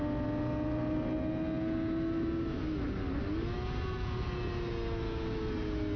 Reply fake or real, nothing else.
real